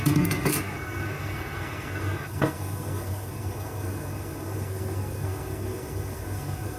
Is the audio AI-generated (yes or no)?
yes